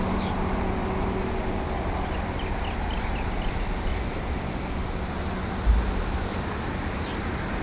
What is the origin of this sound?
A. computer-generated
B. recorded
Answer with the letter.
B